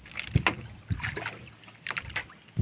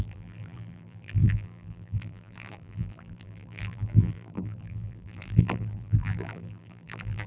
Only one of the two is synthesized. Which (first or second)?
second